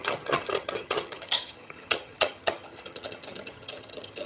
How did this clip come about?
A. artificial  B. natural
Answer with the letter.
A